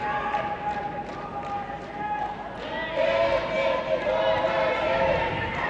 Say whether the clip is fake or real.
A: real